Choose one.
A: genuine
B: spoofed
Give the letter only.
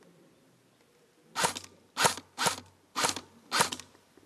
A